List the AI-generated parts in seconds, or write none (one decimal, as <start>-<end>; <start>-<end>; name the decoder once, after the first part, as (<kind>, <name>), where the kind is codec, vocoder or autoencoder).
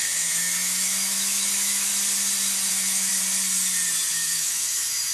0.0-1.9 (autoencoder, DAC-VAE); 2.7-3.1; 4.1-5.1